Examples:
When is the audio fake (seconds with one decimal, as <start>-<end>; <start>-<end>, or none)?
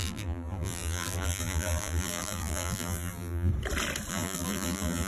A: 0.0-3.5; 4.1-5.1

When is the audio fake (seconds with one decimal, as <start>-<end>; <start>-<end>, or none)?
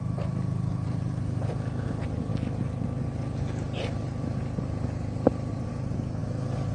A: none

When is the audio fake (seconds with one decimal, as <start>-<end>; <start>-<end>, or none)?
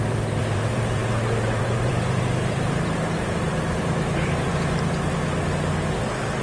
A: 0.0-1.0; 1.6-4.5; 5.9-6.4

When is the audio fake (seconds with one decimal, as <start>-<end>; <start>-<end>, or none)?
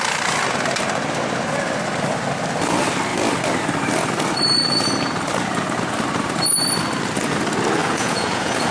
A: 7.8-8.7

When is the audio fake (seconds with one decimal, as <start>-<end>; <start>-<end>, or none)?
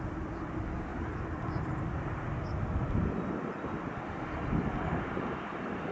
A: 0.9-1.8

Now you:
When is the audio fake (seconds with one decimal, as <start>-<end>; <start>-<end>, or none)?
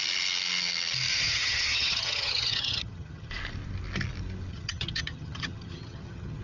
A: 1.1-3.3; 4.5-6.4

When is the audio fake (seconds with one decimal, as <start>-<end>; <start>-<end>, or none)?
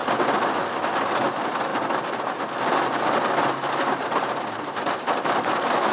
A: none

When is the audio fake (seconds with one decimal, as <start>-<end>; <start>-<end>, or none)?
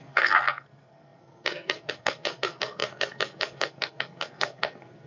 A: 0.0-5.1